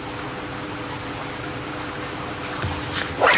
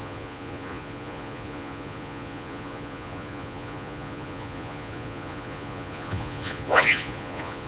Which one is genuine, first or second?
first